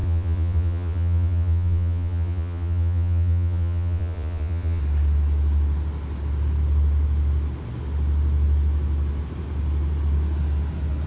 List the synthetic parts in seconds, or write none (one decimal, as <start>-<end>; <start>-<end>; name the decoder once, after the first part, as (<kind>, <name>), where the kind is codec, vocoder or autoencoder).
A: 0.0-4.8 (vocoder, Vocos)